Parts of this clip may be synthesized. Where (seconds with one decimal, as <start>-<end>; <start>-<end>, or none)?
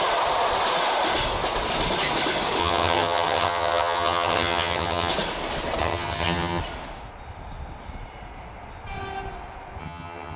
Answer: 2.6-5.1; 5.8-6.6; 9.8-10.4